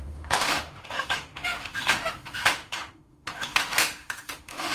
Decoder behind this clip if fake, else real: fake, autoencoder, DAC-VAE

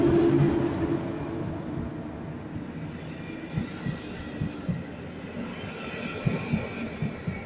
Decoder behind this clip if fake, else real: real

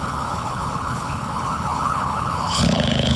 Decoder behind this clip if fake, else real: fake, codec, HILCodec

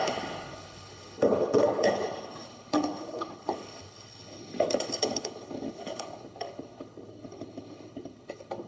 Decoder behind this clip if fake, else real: fake, codec, HILCodec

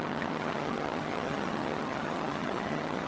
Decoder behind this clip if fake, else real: fake, vocoder, HiFi-GAN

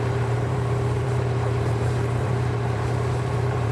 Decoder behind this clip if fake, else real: fake, vocoder, BigVGAN v2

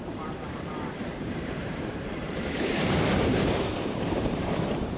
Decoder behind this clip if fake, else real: fake, vocoder, BigVGAN v2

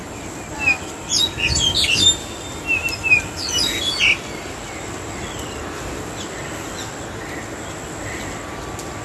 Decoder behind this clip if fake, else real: real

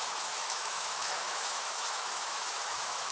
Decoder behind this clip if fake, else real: fake, autoencoder, DAC-VAE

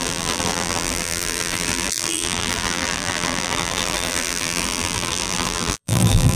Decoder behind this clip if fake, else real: fake, vocoder, BigVGAN v2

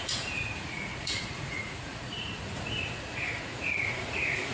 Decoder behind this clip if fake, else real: fake, vocoder, Vocos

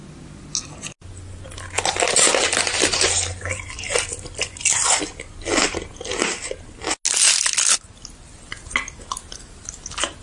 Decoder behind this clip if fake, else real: real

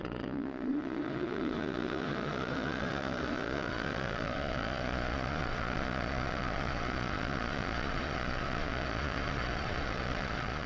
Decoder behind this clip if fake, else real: fake, vocoder, Vocos